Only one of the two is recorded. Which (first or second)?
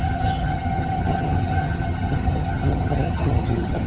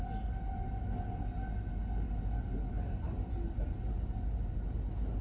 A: second